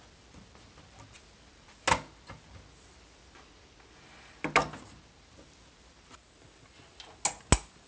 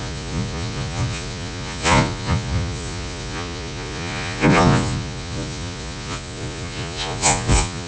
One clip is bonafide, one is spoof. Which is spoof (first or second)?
second